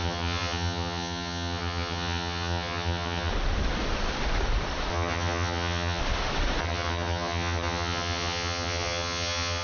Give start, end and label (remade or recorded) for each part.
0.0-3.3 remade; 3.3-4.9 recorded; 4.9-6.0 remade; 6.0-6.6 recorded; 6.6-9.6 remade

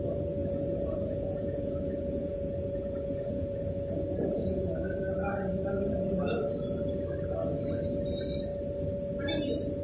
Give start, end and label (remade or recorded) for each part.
0.0-0.4 recorded; 0.4-5.0 remade; 5.0-9.8 recorded